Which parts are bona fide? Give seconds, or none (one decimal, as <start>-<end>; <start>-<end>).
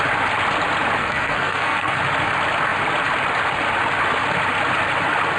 0.0-1.0; 2.0-5.4